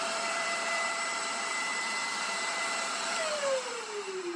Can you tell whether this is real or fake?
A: fake